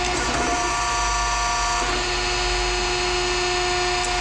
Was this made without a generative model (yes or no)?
yes